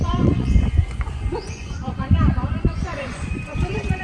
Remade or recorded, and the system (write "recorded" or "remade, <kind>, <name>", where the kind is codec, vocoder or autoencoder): remade, vocoder, Vocos